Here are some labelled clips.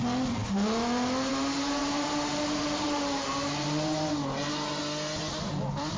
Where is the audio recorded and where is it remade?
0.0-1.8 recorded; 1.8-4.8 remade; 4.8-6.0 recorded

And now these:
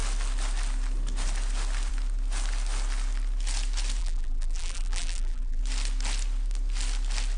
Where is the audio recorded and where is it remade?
0.0-4.0 recorded; 4.0-5.6 remade; 5.6-7.4 recorded

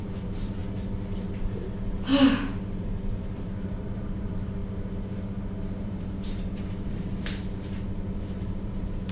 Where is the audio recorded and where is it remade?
0.0-0.6 remade; 0.6-1.4 recorded; 1.4-2.1 remade; 2.1-2.8 recorded; 2.8-4.6 remade; 4.6-5.8 recorded; 5.8-9.1 remade

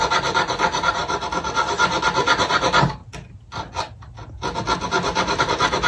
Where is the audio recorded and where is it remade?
0.0-1.0 remade; 1.0-2.4 recorded; 2.4-3.0 remade; 3.0-5.4 recorded; 5.4-5.9 remade

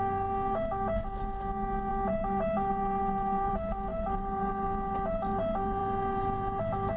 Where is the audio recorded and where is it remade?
0.0-1.9 recorded; 1.9-3.5 remade; 3.5-3.9 recorded; 3.9-4.5 remade; 4.5-5.8 recorded; 5.8-6.6 remade; 6.6-7.0 recorded

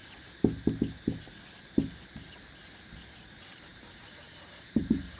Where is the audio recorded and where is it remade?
0.0-3.0 recorded; 3.0-5.2 remade

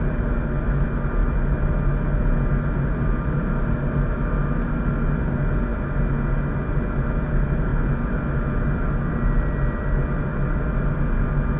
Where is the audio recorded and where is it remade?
0.0-11.6 recorded